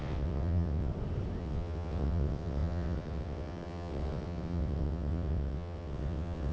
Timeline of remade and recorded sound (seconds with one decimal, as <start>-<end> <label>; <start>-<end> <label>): 0.0-0.9 remade; 0.9-1.4 recorded; 1.4-6.5 remade